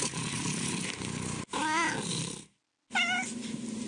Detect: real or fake real